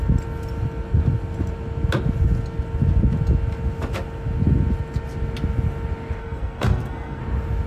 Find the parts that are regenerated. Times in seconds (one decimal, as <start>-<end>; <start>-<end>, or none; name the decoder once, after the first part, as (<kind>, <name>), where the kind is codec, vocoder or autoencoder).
6.2-7.2 (codec, SNAC)